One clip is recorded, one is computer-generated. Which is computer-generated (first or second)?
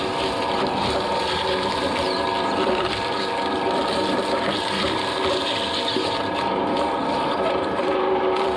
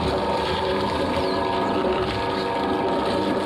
first